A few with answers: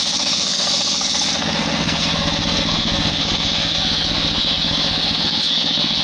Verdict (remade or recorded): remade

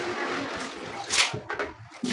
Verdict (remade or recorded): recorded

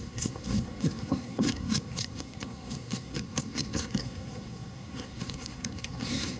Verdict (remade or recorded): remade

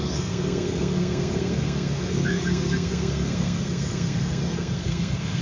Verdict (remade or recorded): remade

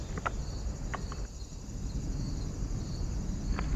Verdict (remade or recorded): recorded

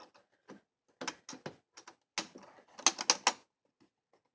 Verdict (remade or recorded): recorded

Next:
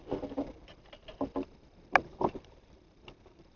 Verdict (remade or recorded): recorded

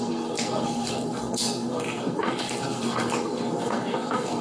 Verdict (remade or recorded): remade